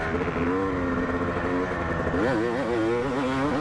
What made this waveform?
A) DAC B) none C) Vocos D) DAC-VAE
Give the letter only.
B